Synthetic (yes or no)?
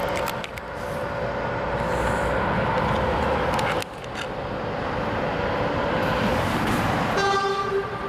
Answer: no